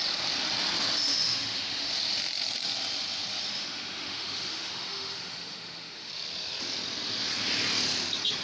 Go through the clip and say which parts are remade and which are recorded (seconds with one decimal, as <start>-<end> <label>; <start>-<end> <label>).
0.0-1.1 recorded; 1.1-1.9 remade; 1.9-3.5 recorded; 3.5-6.1 remade; 6.1-8.4 recorded